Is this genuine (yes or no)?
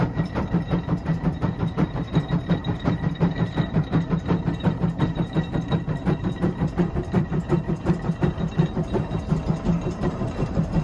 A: no